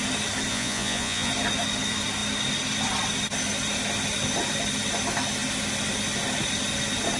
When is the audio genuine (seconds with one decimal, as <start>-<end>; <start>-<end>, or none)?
0.0-0.5; 1.3-7.2